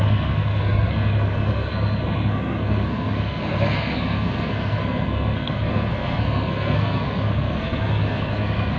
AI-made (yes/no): yes